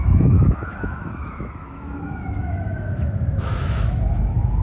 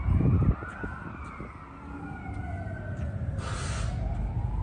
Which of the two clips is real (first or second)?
second